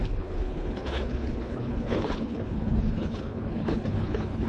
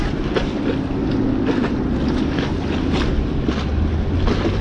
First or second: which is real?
second